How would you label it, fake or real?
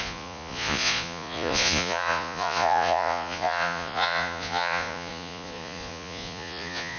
fake